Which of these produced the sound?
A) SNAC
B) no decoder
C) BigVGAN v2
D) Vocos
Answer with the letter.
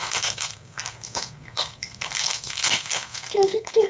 A